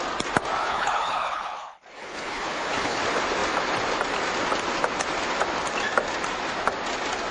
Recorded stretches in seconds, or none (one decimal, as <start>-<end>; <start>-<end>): 0.0-0.6; 3.0-7.3